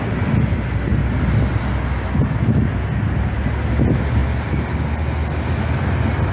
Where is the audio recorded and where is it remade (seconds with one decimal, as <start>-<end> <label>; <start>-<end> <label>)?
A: 0.0-6.3 recorded

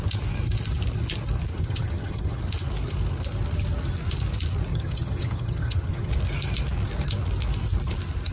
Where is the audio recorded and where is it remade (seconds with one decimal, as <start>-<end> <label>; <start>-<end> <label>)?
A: 0.0-1.5 recorded; 1.5-2.4 remade; 2.4-4.7 recorded; 4.7-6.1 remade; 6.1-8.3 recorded